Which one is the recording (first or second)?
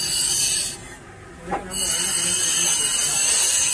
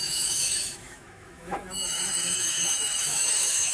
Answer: first